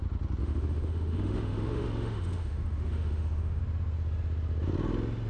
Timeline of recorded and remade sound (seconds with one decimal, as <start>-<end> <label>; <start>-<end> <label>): 0.0-0.4 recorded; 0.4-3.6 remade; 3.6-5.3 recorded

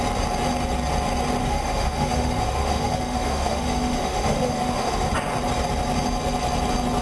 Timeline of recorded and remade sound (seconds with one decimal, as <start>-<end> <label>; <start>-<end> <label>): 0.0-1.4 recorded; 1.4-5.1 remade; 5.1-7.0 recorded

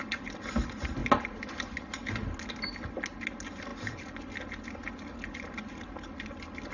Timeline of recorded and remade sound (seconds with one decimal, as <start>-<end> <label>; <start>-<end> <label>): 0.0-6.7 recorded

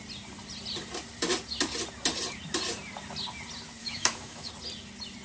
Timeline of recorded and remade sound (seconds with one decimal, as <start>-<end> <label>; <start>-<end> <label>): 0.0-3.8 recorded; 3.8-4.5 remade; 4.5-5.2 recorded

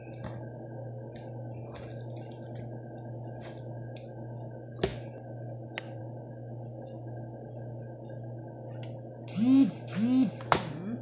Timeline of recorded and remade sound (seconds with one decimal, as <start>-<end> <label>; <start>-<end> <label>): 0.0-11.0 recorded

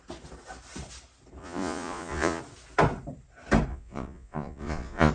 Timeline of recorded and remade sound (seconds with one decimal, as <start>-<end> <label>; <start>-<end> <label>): 0.0-1.4 recorded; 1.4-2.4 remade; 2.4-3.7 recorded; 3.7-5.1 remade

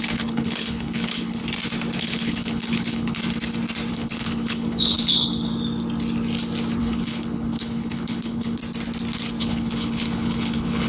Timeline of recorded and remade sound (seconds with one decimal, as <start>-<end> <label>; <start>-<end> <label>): 0.0-1.4 remade; 1.4-2.0 recorded; 2.0-3.2 remade; 3.2-3.9 recorded; 3.9-5.5 remade; 5.5-6.8 recorded; 6.8-8.6 remade; 8.6-9.4 recorded; 9.4-10.9 remade

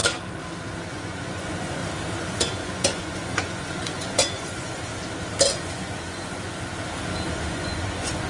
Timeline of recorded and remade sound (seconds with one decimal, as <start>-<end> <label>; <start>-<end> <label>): 0.0-0.9 recorded; 0.9-1.8 remade; 1.8-2.3 recorded; 2.3-4.9 remade; 4.9-5.5 recorded; 5.5-6.7 remade; 6.7-7.3 recorded; 7.3-8.3 remade